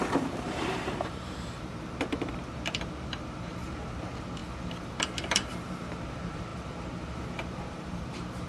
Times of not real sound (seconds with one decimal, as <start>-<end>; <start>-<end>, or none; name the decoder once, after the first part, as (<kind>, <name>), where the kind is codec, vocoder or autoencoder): 0.0-8.5 (vocoder, BigVGAN v2)